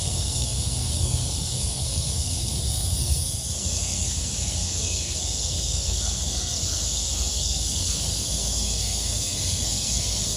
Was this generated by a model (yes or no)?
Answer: yes